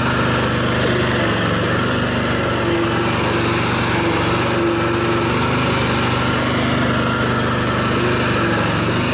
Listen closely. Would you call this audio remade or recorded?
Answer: recorded